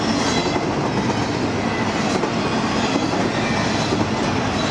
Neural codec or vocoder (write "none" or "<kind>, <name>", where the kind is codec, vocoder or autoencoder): none